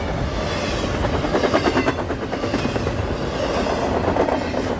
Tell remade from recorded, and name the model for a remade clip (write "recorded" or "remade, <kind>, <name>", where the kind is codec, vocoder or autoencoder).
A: recorded